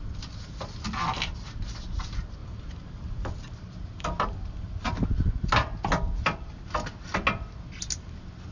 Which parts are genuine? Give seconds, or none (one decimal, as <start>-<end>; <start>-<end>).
0.0-2.4; 4.8-8.5

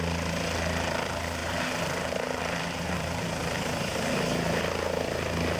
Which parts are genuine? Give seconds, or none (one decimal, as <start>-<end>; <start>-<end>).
0.0-1.4; 3.2-5.6

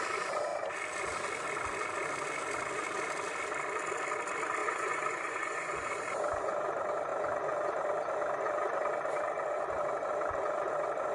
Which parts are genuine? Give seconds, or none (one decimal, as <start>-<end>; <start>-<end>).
0.0-4.6; 5.9-11.1

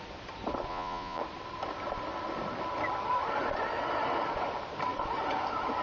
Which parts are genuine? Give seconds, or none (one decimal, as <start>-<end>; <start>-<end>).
0.0-0.7; 1.2-5.8

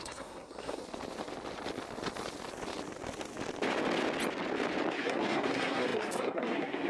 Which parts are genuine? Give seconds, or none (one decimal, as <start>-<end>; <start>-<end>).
0.8-4.9

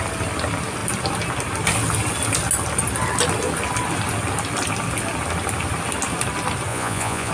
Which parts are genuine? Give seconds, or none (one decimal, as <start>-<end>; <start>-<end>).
0.0-6.7